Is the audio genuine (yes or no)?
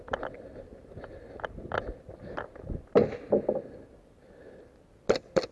yes